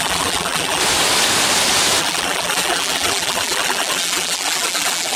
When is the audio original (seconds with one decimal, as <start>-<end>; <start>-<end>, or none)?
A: 0.8-2.0